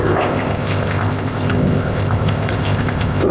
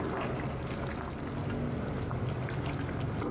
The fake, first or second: first